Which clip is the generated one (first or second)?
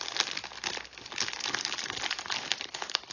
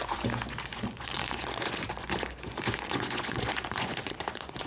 second